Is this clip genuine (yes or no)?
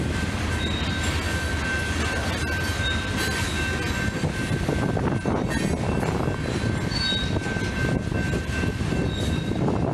yes